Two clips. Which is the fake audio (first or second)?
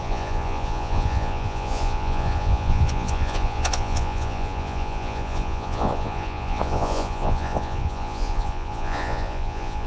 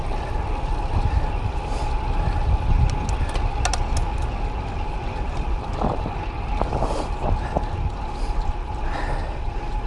first